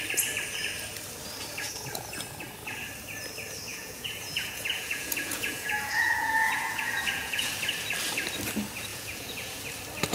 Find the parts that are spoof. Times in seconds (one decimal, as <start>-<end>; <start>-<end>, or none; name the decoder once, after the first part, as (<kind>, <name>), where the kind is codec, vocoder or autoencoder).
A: 3.7-7.5 (vocoder, Vocos); 8.9-9.6